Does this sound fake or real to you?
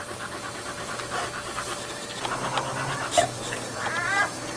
real